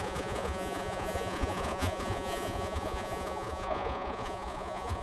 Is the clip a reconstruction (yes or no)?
yes